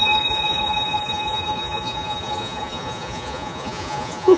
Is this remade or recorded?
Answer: remade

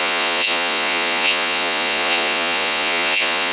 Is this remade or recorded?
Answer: remade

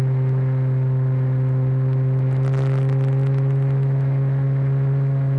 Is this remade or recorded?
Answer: recorded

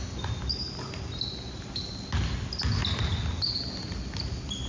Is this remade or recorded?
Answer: recorded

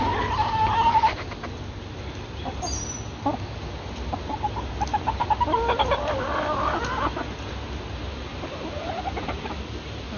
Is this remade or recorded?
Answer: recorded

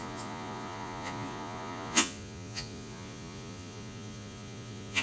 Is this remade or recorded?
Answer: remade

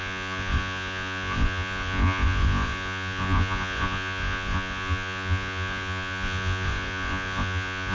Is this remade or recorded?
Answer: remade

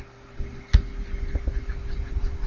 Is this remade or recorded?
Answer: recorded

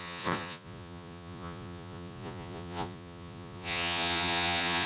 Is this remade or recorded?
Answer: remade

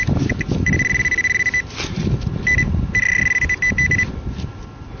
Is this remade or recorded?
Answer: recorded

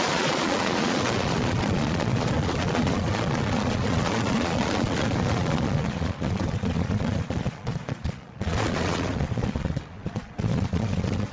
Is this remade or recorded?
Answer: remade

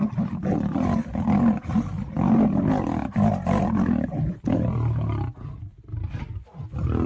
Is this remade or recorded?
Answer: recorded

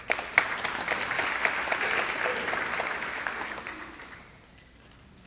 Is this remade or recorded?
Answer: recorded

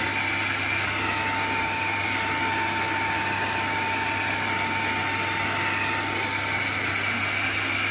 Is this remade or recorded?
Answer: recorded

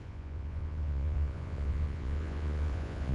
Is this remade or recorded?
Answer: remade